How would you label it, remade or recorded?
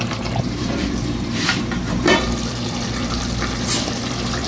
remade